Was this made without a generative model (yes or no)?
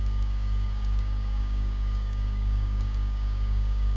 no